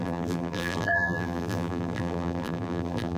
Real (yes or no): no